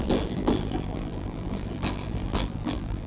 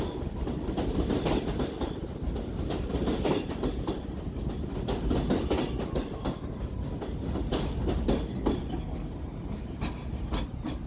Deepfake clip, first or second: first